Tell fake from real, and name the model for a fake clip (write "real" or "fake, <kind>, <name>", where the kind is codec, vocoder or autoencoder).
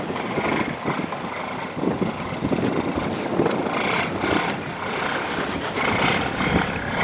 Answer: real